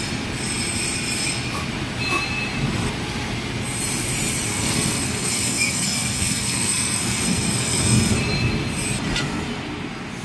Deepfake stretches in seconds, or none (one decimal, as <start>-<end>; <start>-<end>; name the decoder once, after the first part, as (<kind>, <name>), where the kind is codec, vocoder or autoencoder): 4.5-8.1 (codec, SNAC)